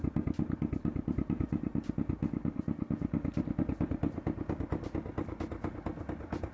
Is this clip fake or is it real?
real